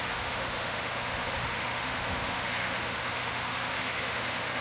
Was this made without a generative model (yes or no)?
no